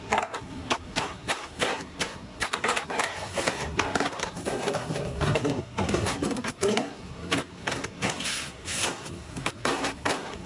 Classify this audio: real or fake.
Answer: fake